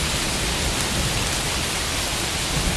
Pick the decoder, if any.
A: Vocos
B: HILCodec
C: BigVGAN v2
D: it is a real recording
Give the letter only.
D